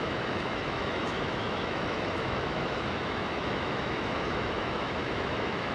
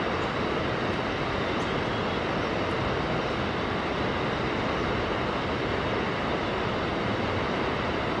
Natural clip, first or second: second